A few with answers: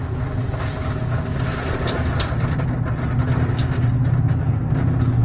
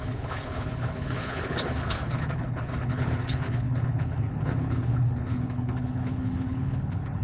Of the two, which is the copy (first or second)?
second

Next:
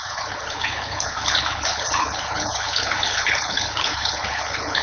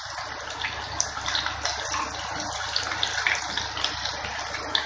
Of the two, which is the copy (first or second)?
first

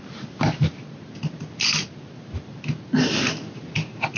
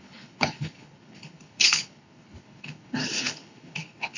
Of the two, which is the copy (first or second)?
second